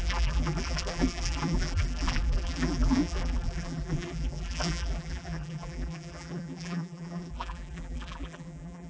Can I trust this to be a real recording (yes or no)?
no